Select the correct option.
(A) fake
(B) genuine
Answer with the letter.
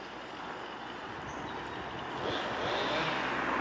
B